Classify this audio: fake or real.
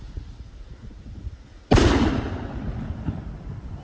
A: real